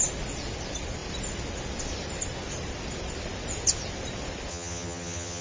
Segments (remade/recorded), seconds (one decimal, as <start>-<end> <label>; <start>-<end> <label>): 0.0-4.5 recorded; 4.5-5.4 remade